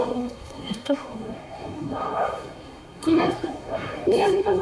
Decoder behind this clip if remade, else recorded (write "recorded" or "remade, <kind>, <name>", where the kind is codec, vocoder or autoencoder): remade, codec, SNAC